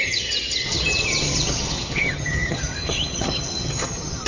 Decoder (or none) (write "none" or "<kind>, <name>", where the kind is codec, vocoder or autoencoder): vocoder, HiFi-GAN